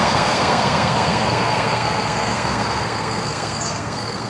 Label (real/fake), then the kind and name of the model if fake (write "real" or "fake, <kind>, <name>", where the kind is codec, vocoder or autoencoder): fake, codec, SNAC